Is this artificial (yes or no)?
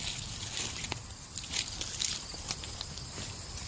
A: no